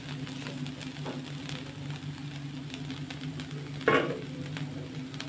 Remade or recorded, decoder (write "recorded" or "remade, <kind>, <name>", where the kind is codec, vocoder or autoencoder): recorded